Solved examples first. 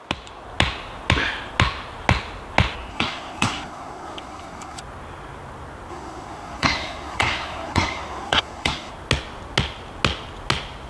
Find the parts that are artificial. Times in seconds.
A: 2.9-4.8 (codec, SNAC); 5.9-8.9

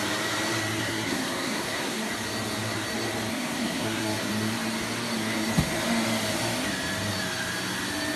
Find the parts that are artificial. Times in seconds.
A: 0.8-2.1 (codec, SNAC); 3.3-4.3

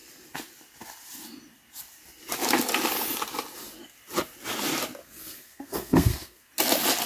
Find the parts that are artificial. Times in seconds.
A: 5.0-6.5 (codec, SNAC)

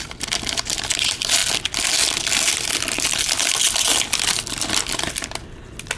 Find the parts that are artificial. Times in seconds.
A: none